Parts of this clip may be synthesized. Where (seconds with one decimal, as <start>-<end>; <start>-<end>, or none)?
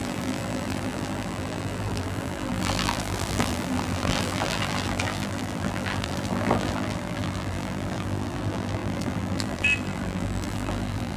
0.0-11.2